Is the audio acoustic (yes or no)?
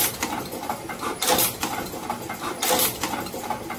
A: yes